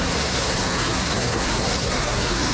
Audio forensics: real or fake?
fake